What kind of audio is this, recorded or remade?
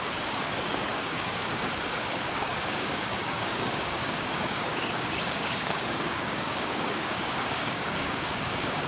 remade